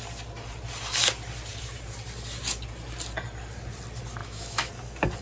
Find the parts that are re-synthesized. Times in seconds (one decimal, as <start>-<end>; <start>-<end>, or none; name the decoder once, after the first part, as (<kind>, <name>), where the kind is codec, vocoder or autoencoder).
4.2-4.7 (autoencoder, DAC-VAE)